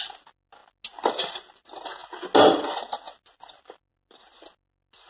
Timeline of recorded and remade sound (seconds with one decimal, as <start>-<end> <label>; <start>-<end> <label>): 0.0-5.1 recorded